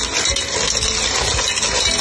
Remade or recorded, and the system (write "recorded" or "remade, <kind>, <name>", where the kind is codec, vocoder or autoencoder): recorded